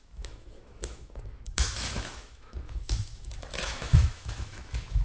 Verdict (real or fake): fake